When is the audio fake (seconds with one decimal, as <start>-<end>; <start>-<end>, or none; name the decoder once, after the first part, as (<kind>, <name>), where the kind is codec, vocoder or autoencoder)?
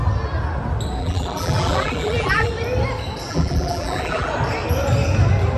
1.0-2.5 (vocoder, BigVGAN v2); 3.3-4.3